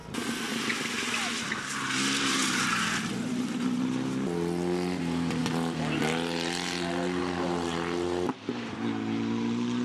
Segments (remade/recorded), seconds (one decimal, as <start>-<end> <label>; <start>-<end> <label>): 0.0-9.8 recorded